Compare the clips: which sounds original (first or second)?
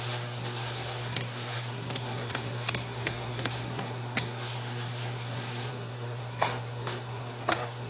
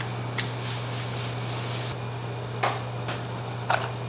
second